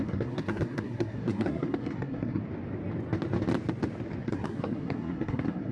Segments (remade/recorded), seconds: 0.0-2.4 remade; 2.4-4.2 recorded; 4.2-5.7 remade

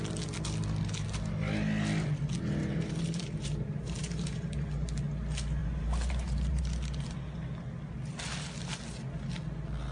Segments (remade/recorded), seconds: 0.0-2.6 recorded; 2.6-4.6 remade; 4.6-5.6 recorded; 5.6-6.6 remade; 6.6-9.9 recorded

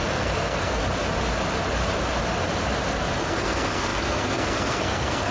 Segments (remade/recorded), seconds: 0.0-0.8 remade; 0.8-3.2 recorded; 3.2-5.3 remade

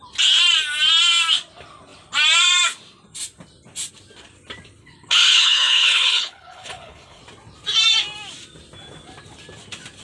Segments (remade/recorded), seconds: 0.0-4.8 recorded; 4.8-7.2 remade; 7.2-10.0 recorded